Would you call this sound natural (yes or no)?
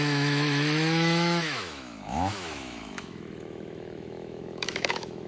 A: no